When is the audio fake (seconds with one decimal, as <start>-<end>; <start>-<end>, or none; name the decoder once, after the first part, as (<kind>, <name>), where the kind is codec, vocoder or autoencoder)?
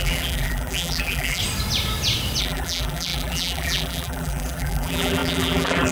0.0-1.4 (vocoder, BigVGAN v2); 2.4-5.9